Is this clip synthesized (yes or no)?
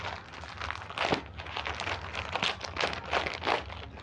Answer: no